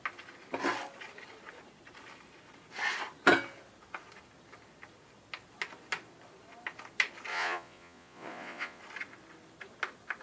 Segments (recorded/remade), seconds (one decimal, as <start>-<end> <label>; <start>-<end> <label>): 0.0-7.3 recorded; 7.3-8.8 remade; 8.8-10.2 recorded